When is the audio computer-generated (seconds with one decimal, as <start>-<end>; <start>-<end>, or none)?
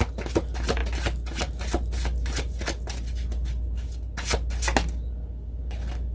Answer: none